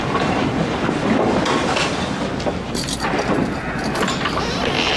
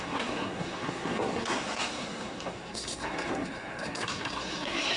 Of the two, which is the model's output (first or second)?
second